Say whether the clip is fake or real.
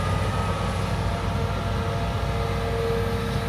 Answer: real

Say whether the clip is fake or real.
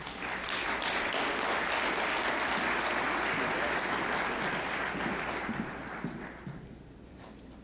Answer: real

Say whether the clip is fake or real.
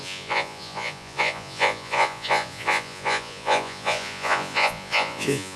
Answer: fake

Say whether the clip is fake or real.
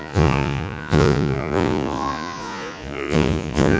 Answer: fake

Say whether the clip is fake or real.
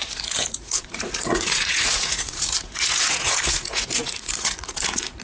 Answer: fake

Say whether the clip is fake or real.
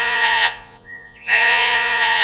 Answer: fake